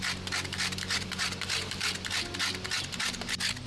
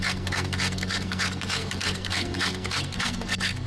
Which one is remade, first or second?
second